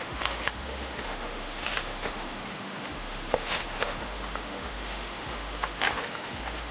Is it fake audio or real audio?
fake